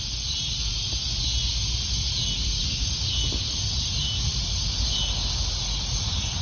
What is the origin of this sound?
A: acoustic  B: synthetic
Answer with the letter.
A